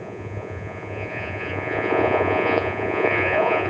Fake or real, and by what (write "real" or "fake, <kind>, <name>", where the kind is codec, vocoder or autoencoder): fake, vocoder, Vocos